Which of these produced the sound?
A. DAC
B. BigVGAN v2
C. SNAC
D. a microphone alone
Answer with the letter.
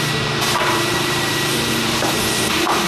B